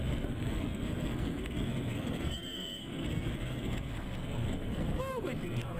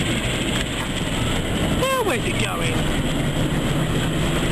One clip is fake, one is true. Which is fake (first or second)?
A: first